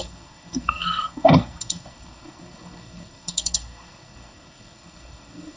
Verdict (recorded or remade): remade